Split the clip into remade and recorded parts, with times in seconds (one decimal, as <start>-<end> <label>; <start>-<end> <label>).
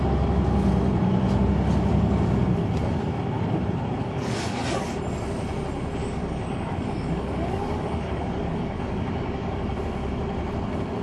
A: 0.0-4.0 recorded; 4.0-4.6 remade; 4.6-6.0 recorded; 6.0-9.7 remade; 9.7-11.0 recorded